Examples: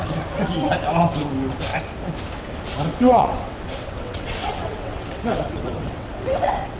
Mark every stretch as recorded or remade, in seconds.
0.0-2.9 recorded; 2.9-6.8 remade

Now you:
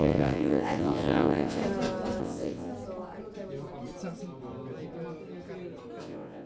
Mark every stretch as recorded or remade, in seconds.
0.0-1.6 remade; 1.6-2.2 recorded; 2.2-2.7 remade; 2.7-6.0 recorded; 6.0-6.5 remade